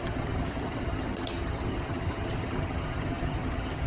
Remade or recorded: remade